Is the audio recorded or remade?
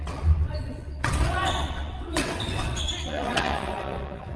remade